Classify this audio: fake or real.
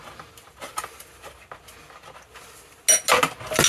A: real